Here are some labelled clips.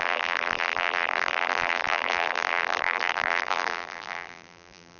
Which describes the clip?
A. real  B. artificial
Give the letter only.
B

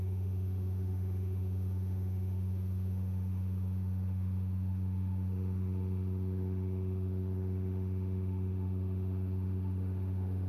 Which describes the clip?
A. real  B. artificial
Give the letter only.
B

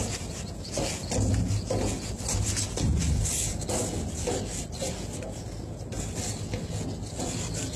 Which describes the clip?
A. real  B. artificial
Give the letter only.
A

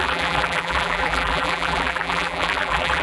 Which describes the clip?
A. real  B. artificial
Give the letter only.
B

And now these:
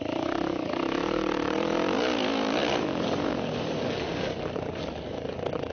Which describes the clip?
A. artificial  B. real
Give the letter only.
A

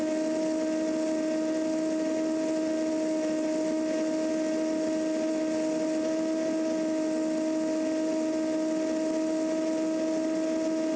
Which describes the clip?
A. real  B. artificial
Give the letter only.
A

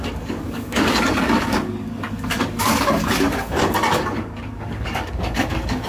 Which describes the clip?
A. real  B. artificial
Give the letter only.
B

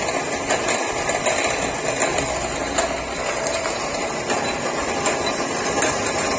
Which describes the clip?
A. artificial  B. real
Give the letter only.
B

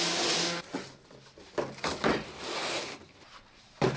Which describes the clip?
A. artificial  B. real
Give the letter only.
B